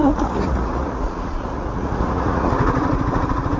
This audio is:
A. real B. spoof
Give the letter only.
B